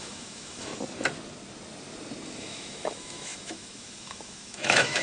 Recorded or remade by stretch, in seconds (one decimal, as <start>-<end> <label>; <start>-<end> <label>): 0.0-0.7 remade; 0.7-2.4 recorded; 2.4-5.0 remade